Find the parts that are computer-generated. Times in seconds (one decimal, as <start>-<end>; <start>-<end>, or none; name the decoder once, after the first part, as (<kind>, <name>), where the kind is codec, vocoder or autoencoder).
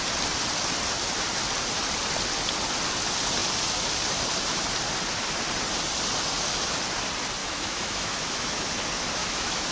7.4-8.7 (autoencoder, DAC-VAE); 9.2-9.7